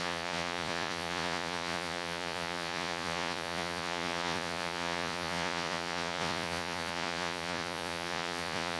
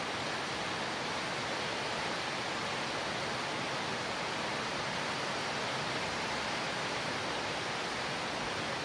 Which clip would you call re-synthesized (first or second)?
first